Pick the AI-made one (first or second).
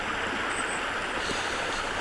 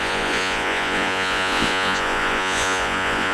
second